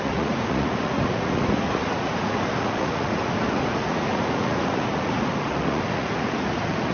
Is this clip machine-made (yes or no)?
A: yes